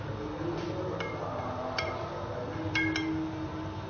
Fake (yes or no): no